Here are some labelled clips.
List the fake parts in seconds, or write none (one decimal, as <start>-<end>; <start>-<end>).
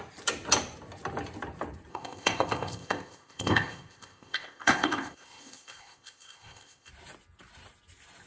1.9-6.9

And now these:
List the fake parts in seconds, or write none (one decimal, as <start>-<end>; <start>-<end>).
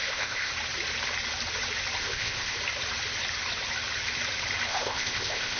0.0-0.5; 2.0-2.6; 4.7-5.6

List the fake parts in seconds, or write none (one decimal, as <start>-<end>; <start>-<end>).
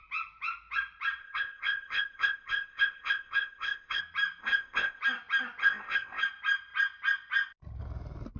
1.2-4.0; 4.4-5.0; 5.6-6.2